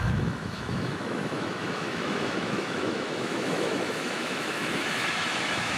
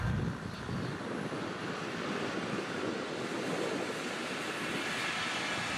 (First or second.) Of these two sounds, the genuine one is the second